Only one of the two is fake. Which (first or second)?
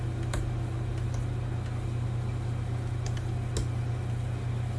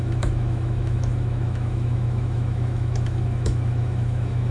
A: second